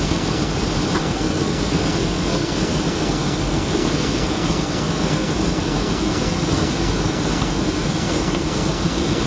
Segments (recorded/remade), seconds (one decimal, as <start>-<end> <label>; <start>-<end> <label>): 0.0-0.5 remade; 0.5-1.0 recorded; 1.0-9.3 remade